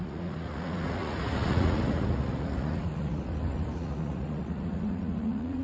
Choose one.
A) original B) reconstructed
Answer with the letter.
B